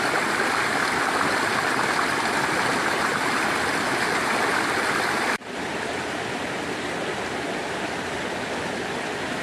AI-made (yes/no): yes